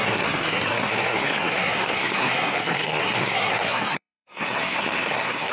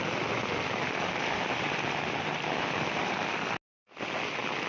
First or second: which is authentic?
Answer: second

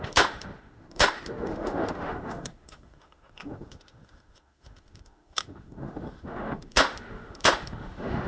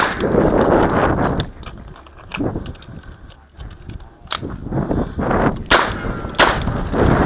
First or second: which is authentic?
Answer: second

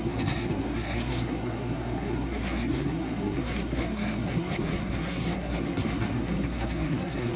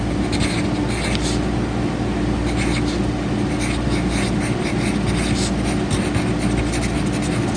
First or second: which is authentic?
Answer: second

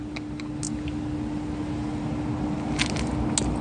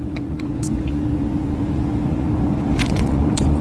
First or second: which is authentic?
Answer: first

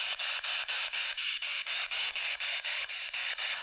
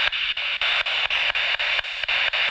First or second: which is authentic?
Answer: second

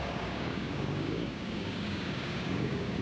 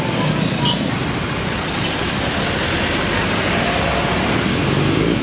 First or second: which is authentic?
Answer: second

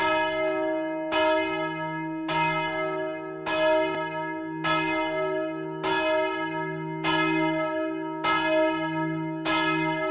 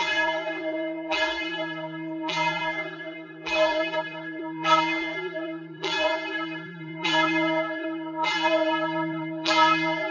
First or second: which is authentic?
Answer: first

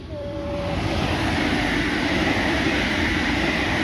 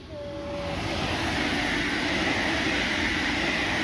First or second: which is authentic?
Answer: second